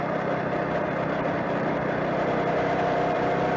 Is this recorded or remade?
remade